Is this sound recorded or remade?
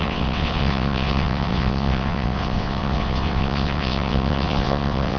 remade